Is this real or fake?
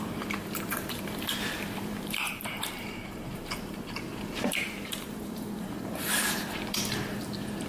fake